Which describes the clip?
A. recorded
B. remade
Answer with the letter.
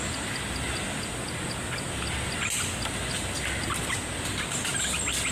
A